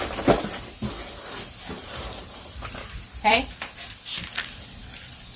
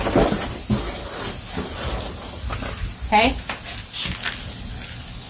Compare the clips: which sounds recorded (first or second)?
second